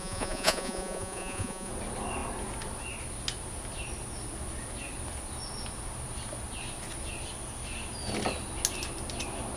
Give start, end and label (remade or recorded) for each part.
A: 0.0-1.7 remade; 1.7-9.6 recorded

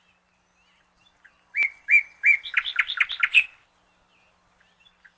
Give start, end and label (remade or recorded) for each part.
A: 0.0-5.2 recorded

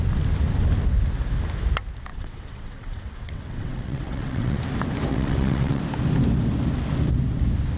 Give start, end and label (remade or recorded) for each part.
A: 0.0-2.1 recorded; 2.1-4.6 remade; 4.6-5.1 recorded; 5.1-5.8 remade; 5.8-7.8 recorded

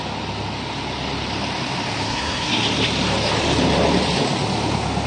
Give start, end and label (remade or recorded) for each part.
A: 0.0-2.0 recorded; 2.0-2.6 remade; 2.6-5.1 recorded

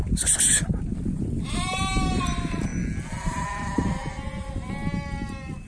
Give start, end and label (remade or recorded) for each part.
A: 0.0-5.7 recorded

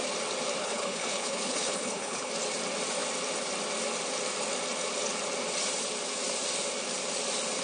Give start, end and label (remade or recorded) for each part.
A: 0.0-0.6 recorded; 0.6-2.3 remade; 2.3-7.6 recorded